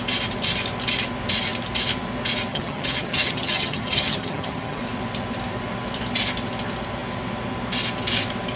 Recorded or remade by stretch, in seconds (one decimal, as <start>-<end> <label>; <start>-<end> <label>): 0.0-2.5 recorded; 2.5-4.8 remade; 4.8-8.6 recorded